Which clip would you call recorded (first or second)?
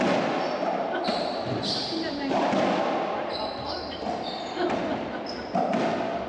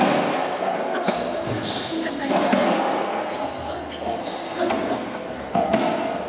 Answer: first